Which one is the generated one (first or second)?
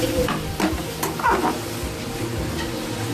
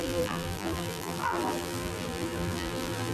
second